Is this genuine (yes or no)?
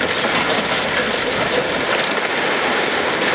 yes